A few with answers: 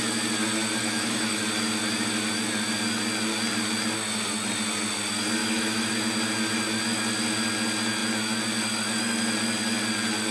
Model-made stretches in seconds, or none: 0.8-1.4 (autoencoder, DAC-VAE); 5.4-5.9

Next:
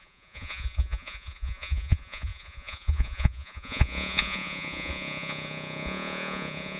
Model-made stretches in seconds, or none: 0.0-6.8 (vocoder, Vocos)

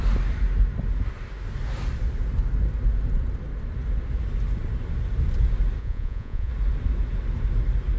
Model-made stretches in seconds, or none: 5.8-6.5 (vocoder, Vocos)

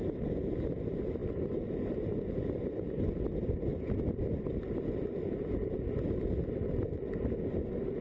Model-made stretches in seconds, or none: none

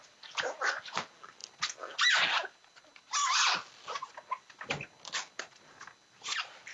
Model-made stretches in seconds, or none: none

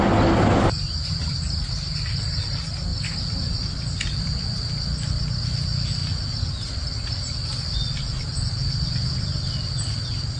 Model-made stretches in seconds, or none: 2.9-4.2 (vocoder, BigVGAN v2); 8.3-9.7

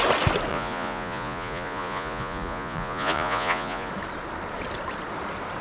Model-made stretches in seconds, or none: 0.5-3.9 (vocoder, Vocos)

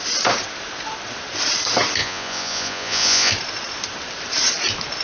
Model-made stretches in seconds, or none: 2.0-3.3 (vocoder, Vocos)